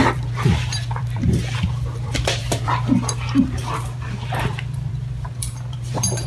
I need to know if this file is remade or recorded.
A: remade